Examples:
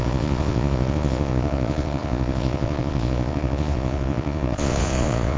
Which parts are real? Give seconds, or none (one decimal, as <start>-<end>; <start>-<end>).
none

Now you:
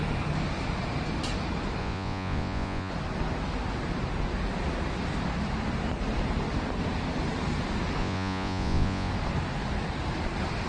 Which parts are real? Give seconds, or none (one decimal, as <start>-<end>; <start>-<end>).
0.0-1.8; 2.9-8.0; 9.1-10.7

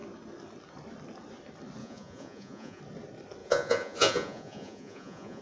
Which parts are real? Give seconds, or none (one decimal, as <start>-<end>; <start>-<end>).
0.0-1.8; 2.8-3.4